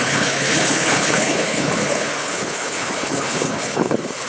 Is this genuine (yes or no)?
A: no